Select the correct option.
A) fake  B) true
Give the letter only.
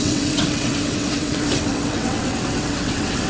A